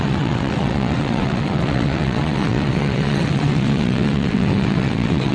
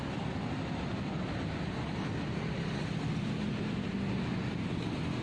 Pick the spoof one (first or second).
first